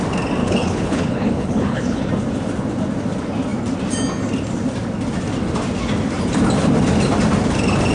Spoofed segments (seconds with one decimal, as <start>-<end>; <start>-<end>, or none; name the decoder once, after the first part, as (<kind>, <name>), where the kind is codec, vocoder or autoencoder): 0.4-2.1 (codec, HILCodec)